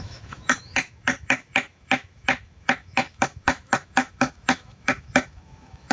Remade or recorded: remade